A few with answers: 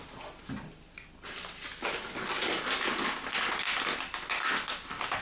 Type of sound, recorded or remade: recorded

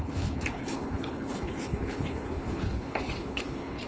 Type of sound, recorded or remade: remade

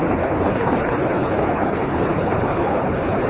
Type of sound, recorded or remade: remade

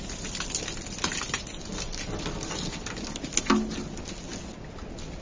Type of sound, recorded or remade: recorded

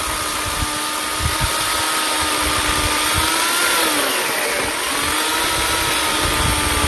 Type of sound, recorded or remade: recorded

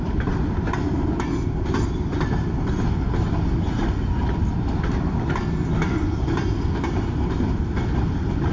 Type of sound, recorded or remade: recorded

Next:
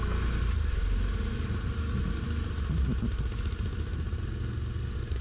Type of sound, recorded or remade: recorded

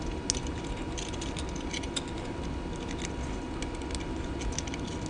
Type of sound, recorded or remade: recorded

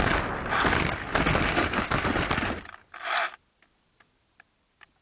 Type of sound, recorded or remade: recorded